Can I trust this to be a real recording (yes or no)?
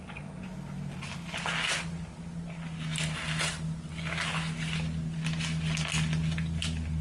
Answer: yes